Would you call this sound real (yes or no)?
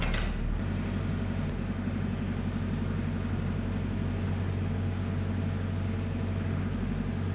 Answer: yes